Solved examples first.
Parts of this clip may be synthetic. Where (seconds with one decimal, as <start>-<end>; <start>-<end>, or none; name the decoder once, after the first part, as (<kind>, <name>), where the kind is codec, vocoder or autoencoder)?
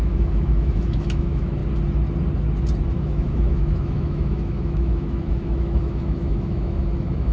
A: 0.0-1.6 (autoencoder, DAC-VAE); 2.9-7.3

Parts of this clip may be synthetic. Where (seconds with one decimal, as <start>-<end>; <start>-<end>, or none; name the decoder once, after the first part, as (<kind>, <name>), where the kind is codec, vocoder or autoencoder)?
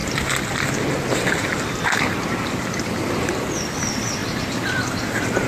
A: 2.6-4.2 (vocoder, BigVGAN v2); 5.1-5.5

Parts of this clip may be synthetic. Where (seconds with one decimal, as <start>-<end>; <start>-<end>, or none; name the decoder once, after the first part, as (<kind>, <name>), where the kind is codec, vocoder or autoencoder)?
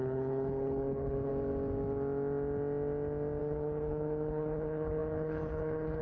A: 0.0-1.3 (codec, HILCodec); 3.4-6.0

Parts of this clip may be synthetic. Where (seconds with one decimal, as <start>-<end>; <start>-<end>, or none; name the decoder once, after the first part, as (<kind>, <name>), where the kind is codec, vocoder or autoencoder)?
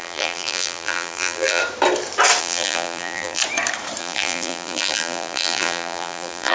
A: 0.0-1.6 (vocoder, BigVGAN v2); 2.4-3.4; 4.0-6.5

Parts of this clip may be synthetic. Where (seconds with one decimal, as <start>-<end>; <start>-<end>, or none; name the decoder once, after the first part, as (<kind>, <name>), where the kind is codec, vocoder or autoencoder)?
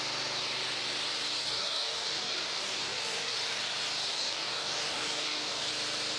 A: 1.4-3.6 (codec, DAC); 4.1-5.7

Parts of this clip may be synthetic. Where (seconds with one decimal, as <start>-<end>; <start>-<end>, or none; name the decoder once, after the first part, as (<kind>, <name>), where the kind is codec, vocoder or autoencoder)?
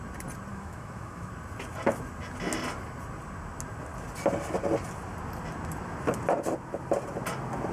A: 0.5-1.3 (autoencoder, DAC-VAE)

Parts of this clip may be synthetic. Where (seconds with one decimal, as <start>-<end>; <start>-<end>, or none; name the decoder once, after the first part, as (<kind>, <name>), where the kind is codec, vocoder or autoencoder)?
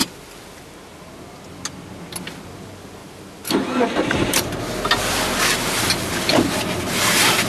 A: 3.0-4.6 (vocoder, BigVGAN v2)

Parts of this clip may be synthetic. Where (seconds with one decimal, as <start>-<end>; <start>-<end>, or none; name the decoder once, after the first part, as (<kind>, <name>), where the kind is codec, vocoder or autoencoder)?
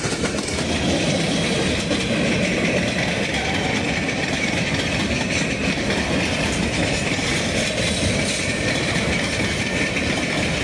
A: 0.0-10.6 (vocoder, BigVGAN v2)